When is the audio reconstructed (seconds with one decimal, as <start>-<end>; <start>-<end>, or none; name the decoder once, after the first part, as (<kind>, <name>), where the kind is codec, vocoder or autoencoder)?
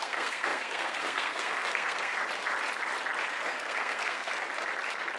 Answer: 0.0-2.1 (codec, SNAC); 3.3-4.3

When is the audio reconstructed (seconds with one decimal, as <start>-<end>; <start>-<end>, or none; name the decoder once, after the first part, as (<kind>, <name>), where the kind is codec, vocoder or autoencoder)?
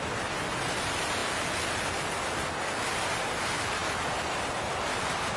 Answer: none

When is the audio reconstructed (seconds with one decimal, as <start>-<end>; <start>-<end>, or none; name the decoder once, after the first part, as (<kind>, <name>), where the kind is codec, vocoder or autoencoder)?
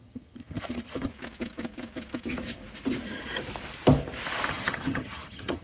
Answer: 0.0-1.1 (vocoder, HiFi-GAN); 4.5-5.6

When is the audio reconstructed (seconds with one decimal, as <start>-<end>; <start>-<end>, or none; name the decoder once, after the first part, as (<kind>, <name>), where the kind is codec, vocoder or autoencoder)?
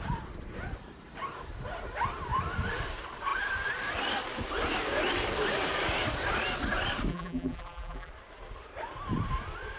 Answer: 7.1-8.1 (vocoder, BigVGAN v2)